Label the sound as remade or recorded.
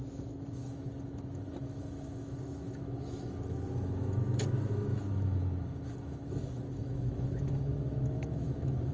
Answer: remade